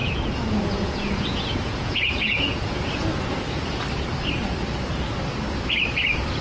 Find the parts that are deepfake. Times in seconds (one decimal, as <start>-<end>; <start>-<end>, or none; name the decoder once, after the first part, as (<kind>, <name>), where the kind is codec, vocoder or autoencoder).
0.0-3.8 (vocoder, Vocos)